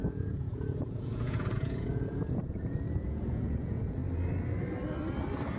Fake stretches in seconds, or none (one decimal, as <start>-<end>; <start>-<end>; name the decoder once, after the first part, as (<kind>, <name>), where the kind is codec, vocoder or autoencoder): 0.0-4.0 (vocoder, Vocos)